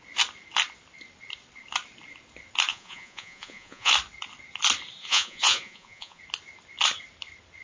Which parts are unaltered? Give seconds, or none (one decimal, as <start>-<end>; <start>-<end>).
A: 0.0-2.7; 3.9-5.0; 6.2-7.6

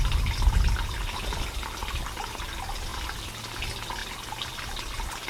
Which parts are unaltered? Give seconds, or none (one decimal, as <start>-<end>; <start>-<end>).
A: 0.0-2.9; 3.6-5.3

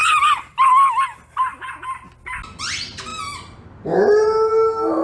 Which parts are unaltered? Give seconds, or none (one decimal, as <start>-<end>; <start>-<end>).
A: 0.0-5.0

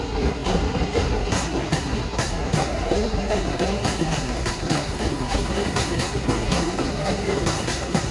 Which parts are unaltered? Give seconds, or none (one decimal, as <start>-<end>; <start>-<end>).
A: none

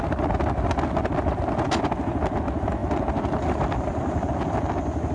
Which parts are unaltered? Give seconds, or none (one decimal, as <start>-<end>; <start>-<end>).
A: 0.0-5.1

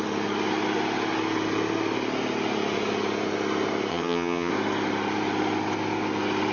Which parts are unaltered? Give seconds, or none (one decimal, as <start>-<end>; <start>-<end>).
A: 0.0-3.9; 4.5-6.5

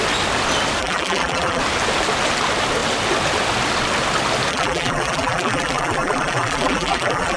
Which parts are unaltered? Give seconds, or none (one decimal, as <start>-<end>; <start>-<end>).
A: 0.0-0.8; 1.6-4.5

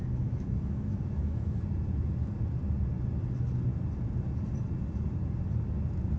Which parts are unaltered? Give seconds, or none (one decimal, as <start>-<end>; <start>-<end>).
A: 1.6-6.2